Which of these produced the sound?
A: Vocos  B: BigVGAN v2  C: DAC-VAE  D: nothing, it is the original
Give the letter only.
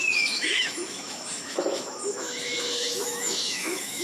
C